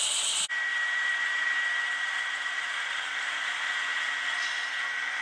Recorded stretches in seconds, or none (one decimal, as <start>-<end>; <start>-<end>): 0.0-0.7; 3.5-5.2